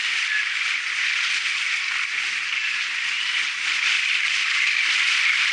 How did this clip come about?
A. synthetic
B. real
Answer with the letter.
B